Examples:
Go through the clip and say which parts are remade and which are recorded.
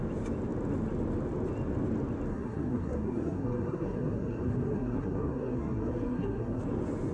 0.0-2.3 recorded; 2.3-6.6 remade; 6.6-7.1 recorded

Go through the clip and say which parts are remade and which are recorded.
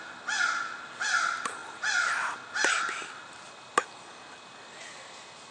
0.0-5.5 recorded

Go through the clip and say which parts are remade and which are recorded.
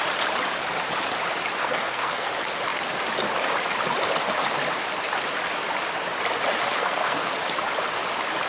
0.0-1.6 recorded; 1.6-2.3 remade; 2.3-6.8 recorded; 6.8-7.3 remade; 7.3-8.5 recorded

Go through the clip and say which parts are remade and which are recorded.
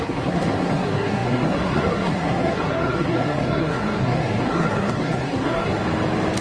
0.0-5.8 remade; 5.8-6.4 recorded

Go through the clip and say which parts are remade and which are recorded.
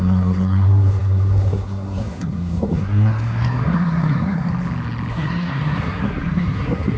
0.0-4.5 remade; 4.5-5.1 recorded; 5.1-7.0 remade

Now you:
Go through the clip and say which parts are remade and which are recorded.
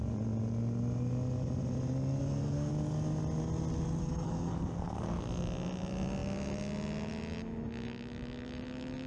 0.0-2.2 recorded; 2.2-2.7 remade; 2.7-4.0 recorded; 4.0-5.2 remade; 5.2-9.1 recorded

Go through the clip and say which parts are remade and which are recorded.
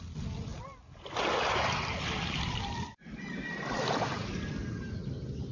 0.0-5.5 recorded